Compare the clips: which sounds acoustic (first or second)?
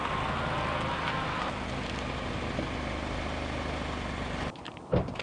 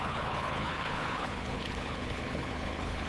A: first